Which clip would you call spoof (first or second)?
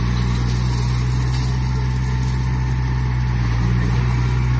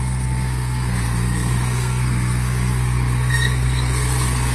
second